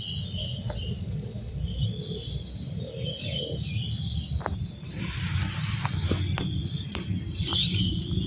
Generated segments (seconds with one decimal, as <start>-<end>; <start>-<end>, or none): 0.4-1.5